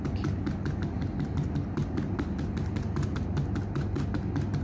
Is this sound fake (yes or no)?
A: no